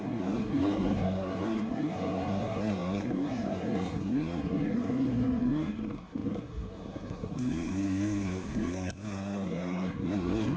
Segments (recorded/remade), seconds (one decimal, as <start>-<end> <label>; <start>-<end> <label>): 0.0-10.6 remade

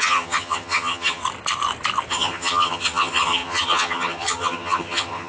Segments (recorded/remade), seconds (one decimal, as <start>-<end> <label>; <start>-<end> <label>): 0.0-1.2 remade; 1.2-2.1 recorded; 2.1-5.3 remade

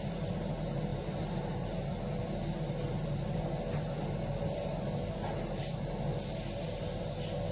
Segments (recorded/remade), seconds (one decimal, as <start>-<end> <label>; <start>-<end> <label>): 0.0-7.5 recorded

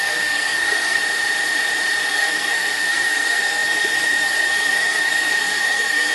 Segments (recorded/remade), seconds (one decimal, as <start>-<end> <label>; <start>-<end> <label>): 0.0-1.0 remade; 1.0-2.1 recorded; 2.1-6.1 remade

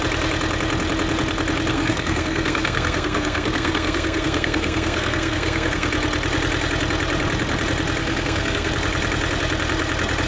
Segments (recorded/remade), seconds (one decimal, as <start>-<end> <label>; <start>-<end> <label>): 0.0-1.7 recorded; 1.7-5.9 remade; 5.9-8.0 recorded; 8.0-8.7 remade; 8.7-10.3 recorded